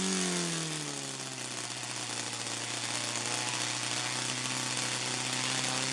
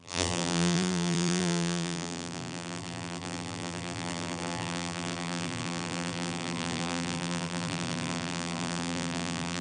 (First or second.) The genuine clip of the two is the first